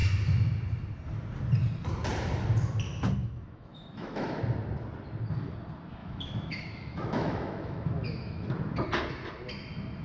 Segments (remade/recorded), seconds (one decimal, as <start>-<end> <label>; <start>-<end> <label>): 0.0-3.2 recorded; 3.2-4.4 remade; 4.4-6.0 recorded; 6.0-8.5 remade; 8.5-10.0 recorded